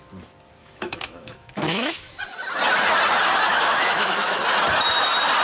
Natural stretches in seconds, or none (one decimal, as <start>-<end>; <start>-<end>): 0.0-0.6; 2.1-3.5; 4.4-5.4

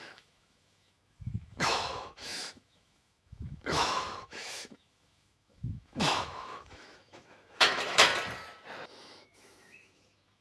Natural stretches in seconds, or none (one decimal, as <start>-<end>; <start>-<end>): 8.1-8.9